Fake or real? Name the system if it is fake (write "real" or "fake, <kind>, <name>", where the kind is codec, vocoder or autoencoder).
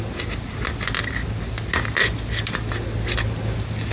real